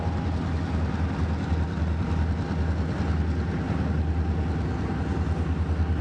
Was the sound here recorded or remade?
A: recorded